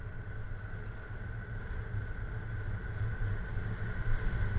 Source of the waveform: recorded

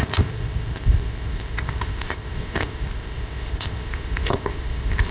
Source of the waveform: remade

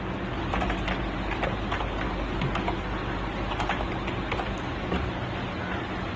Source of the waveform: recorded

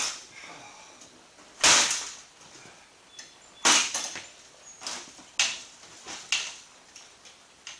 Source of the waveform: recorded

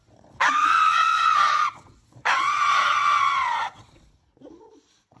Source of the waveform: remade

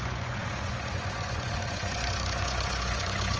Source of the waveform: remade